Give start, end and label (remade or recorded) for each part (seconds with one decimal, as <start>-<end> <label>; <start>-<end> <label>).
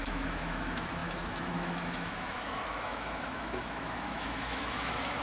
0.0-5.2 remade